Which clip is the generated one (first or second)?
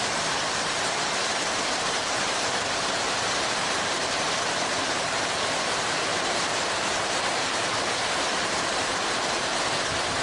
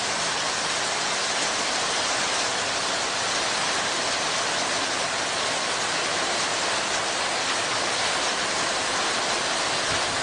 first